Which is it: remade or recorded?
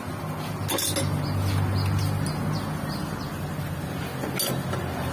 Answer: recorded